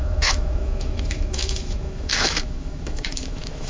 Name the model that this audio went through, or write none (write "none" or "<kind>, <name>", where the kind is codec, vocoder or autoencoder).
autoencoder, DAC-VAE